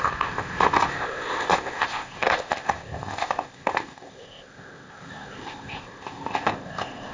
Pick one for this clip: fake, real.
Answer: fake